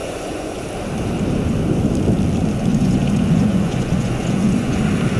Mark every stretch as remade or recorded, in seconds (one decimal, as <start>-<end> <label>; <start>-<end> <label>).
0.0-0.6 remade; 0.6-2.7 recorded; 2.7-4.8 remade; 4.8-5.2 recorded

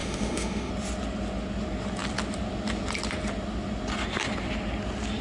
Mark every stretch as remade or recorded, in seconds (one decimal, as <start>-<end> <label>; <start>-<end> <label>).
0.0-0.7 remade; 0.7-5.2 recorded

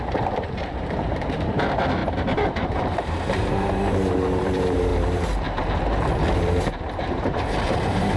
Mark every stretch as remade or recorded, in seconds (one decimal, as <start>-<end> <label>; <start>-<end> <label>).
0.0-4.9 remade; 4.9-6.7 recorded; 6.7-8.2 remade

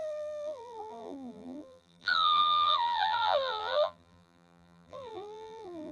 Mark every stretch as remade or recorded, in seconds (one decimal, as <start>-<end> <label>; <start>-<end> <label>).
0.0-5.9 remade

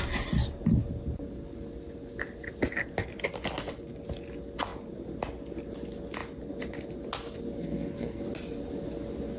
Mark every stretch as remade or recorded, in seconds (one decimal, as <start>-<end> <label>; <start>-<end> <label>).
0.0-7.6 recorded; 7.6-8.2 remade; 8.2-9.4 recorded